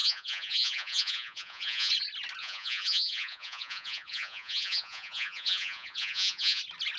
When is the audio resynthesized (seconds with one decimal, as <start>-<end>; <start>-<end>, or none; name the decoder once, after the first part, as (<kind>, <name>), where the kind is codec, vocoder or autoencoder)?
0.0-1.9 (vocoder, Vocos); 2.4-6.6